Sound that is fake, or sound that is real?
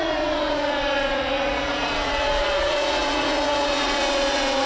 fake